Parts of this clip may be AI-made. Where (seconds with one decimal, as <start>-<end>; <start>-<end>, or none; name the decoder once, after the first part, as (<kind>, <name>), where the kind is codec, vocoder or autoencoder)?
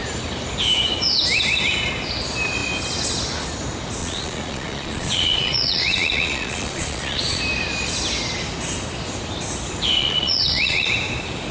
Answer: 4.0-7.4 (vocoder, Vocos); 10.0-10.9